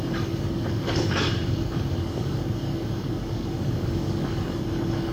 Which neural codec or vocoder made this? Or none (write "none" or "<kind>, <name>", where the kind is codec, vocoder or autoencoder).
codec, DAC